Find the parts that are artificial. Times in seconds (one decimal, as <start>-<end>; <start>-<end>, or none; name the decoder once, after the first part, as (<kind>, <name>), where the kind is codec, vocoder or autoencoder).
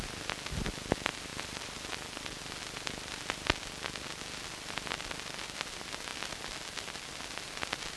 1.3-2.4 (vocoder, BigVGAN v2)